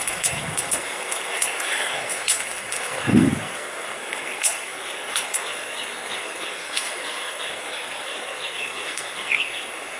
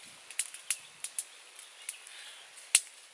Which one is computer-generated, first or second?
first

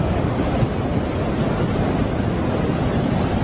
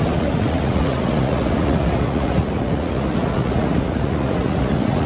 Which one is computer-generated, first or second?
second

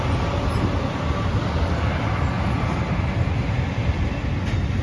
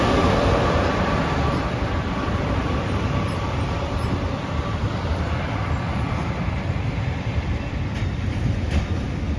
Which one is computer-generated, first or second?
second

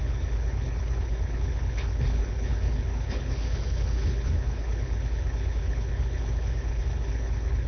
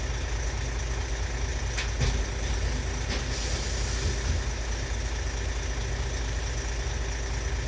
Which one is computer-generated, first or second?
first